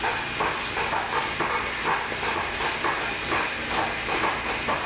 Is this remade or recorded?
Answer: recorded